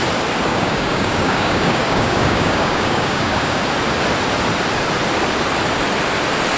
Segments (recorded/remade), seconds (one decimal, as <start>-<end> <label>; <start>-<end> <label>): 0.0-0.5 recorded; 0.5-3.6 remade; 3.6-6.6 recorded